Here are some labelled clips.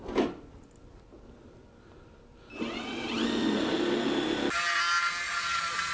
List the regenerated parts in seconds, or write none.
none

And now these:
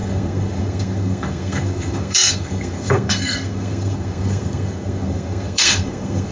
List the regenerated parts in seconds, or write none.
0.0-6.3